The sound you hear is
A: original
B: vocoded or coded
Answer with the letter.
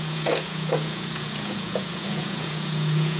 B